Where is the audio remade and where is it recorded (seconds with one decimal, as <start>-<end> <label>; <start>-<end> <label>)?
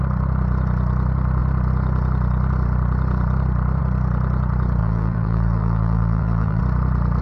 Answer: 0.0-4.8 recorded; 4.8-6.6 remade; 6.6-7.2 recorded